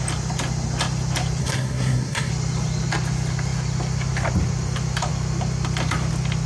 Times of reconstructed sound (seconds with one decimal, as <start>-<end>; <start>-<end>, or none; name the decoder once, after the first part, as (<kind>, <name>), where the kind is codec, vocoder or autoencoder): 1.4-2.3 (codec, SNAC)